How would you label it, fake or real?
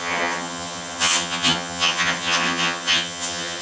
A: fake